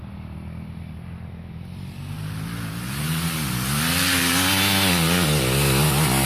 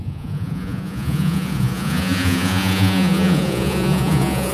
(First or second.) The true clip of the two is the first